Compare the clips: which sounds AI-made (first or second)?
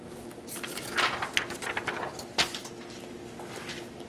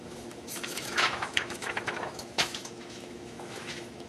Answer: second